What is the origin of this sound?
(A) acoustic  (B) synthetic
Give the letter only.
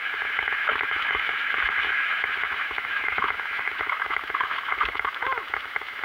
B